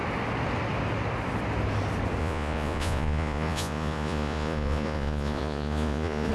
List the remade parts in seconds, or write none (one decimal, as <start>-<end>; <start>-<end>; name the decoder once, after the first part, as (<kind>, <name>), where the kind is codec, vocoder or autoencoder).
2.2-6.3 (vocoder, Vocos)